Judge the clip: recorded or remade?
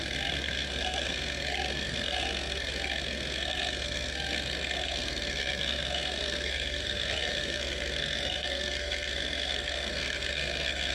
remade